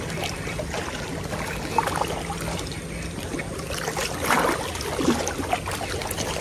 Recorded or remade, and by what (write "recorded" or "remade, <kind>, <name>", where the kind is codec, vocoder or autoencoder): recorded